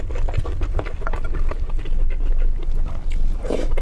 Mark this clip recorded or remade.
recorded